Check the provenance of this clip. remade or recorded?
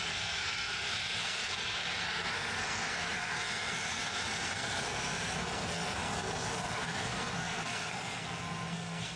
remade